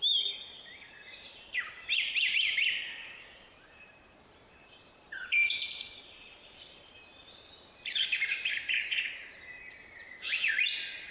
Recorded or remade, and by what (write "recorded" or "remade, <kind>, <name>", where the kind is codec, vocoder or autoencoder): remade, vocoder, BigVGAN v2